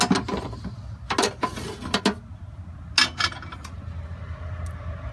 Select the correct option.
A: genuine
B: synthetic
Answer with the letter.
A